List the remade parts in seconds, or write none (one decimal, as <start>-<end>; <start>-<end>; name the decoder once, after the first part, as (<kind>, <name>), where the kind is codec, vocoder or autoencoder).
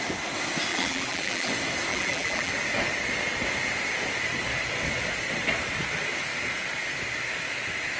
0.7-1.5 (vocoder, BigVGAN v2); 1.9-2.5